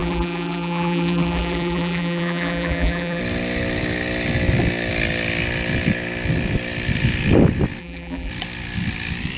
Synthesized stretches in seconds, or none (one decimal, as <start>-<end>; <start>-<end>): 0.0-3.2; 7.8-8.3